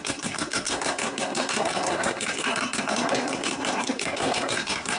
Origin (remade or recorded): remade